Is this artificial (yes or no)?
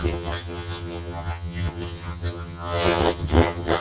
yes